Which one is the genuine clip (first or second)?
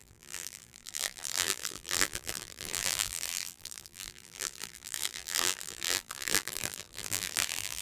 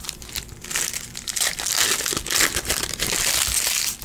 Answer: second